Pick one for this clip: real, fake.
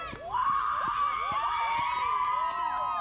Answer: real